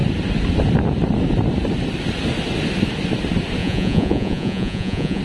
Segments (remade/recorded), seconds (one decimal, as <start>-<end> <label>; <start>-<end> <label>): 0.0-3.6 recorded; 3.6-5.2 remade